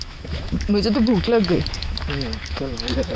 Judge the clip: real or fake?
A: fake